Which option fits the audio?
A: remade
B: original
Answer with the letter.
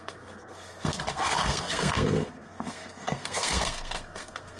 A